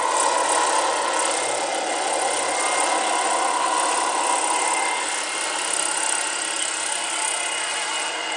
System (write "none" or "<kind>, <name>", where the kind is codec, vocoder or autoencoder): none